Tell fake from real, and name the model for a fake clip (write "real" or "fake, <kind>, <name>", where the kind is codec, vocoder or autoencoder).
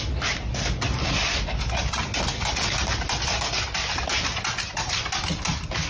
real